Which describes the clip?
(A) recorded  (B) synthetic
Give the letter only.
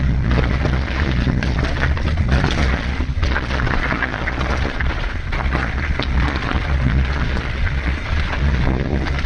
B